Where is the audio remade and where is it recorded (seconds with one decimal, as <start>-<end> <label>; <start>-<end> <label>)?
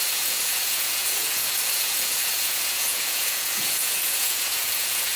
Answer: 0.0-5.2 remade